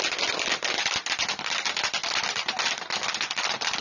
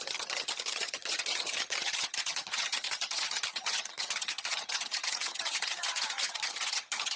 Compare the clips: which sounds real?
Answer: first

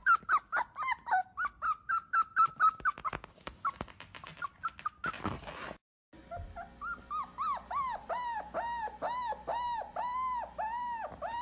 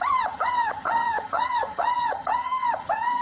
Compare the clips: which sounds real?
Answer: first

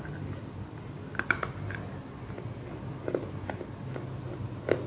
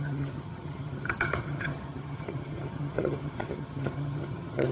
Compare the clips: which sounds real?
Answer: first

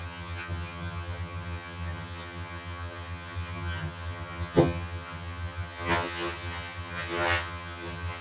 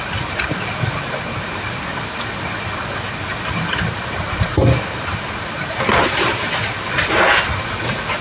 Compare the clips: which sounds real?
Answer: second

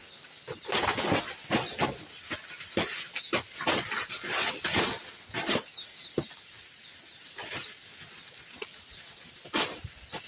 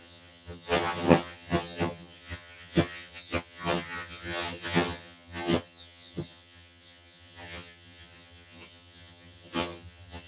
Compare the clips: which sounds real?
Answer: first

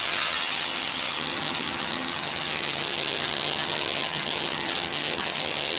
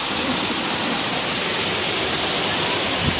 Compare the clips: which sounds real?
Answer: second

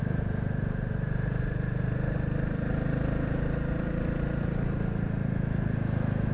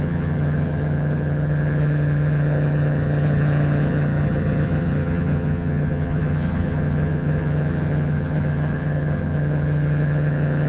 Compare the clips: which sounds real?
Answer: first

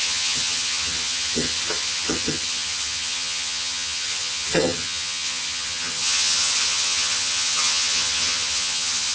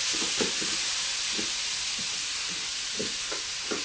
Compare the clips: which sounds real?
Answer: second